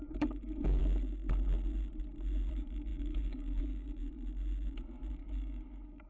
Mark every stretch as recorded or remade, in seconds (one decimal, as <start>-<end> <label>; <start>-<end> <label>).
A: 0.0-0.8 remade; 0.8-2.5 recorded; 2.5-4.0 remade; 4.0-5.1 recorded; 5.1-6.1 remade